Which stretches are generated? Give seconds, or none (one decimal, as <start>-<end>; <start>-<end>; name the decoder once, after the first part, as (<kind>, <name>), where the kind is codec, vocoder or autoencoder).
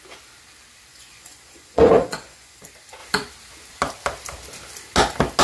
0.9-2.6 (vocoder, Vocos)